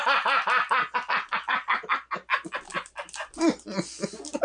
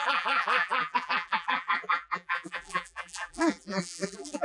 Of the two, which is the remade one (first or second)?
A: second